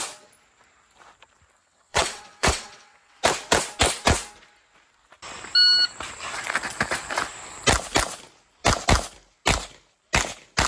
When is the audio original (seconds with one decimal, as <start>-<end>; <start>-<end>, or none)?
0.0-1.6; 3.2-10.7